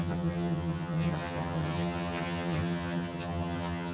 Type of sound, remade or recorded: remade